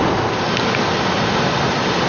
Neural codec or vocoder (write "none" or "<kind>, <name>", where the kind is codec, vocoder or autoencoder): none